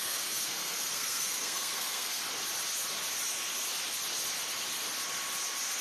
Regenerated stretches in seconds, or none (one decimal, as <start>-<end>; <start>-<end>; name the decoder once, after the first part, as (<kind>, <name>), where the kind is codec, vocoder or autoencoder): 0.0-2.2 (codec, SNAC)